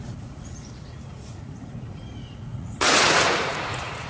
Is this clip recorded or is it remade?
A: remade